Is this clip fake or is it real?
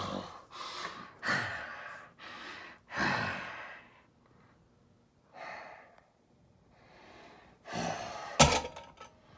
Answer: real